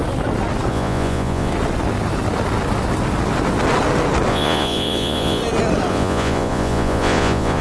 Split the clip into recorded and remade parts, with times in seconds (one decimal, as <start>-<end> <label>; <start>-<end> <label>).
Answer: 0.0-0.7 recorded; 0.7-1.5 remade; 1.5-4.3 recorded; 4.3-5.4 remade; 5.4-5.9 recorded; 5.9-7.6 remade